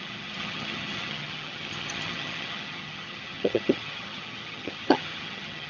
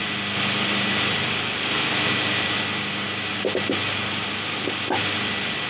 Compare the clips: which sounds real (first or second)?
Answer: second